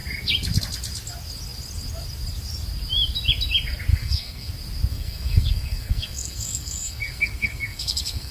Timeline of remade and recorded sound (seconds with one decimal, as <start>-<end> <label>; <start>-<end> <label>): 0.0-3.9 recorded; 3.9-4.5 remade; 4.5-4.9 recorded; 4.9-8.3 remade